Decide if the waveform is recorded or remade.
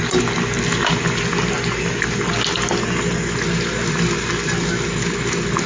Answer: recorded